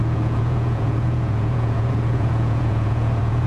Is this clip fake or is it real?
fake